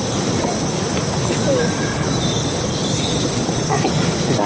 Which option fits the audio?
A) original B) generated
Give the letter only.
A